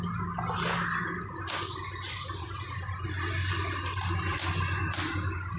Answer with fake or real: real